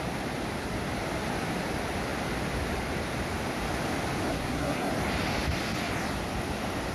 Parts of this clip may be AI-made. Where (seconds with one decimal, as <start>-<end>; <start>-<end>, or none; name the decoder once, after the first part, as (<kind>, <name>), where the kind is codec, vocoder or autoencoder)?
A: 4.3-4.9 (codec, SNAC)